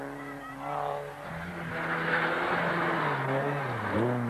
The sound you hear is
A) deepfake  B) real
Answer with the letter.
B